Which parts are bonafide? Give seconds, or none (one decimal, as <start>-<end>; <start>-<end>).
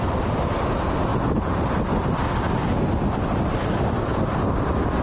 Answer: 0.0-5.0